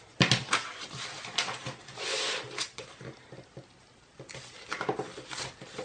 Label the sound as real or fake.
real